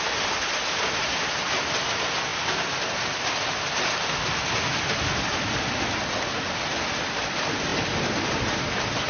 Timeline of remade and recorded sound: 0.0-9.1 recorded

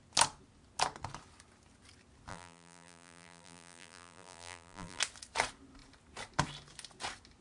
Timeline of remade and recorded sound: 0.0-2.3 recorded; 2.3-5.0 remade; 5.0-7.4 recorded

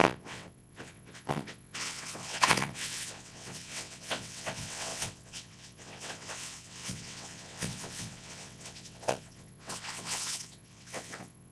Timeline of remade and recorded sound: 0.0-11.5 remade

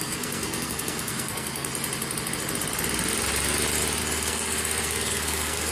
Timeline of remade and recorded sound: 0.0-1.7 remade; 1.7-4.0 recorded; 4.0-5.7 remade

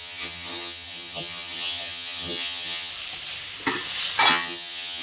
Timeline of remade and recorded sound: 0.0-2.9 remade; 2.9-4.3 recorded; 4.3-5.0 remade

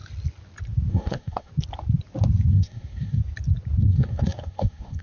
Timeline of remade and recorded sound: 0.0-0.9 recorded; 0.9-1.5 remade; 1.5-2.5 recorded; 2.5-3.2 remade; 3.2-3.8 recorded; 3.8-5.0 remade